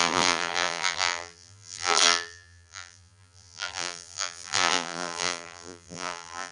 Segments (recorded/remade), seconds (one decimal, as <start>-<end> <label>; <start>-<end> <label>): 0.0-6.5 remade